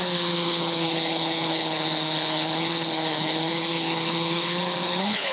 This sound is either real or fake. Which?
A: fake